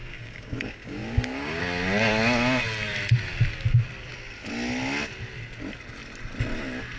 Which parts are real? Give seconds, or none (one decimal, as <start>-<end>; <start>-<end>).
1.6-7.0